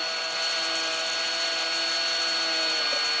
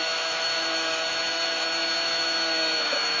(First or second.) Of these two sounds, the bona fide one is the first